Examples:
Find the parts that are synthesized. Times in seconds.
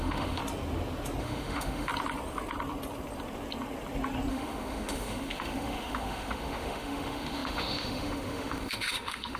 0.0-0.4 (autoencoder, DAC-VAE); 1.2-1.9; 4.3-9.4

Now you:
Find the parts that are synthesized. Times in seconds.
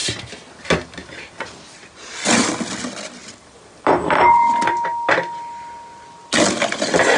1.0-2.5 (vocoder, BigVGAN v2); 3.2-4.5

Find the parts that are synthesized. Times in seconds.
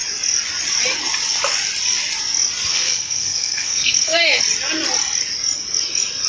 2.7-4.4 (codec, SNAC)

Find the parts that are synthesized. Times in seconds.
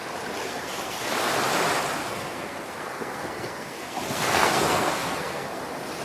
0.4-1.1 (codec, SNAC); 2.0-5.6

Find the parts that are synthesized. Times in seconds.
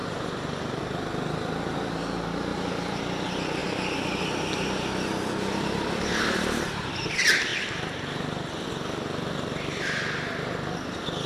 0.0-0.8 (vocoder, BigVGAN v2); 2.5-3.0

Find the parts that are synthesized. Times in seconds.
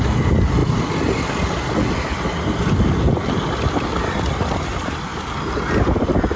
0.6-4.4 (vocoder, BigVGAN v2); 5.1-6.4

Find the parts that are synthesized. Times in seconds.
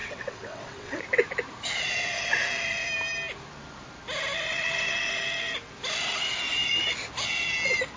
0.0-1.0 (vocoder, WaveNeXt)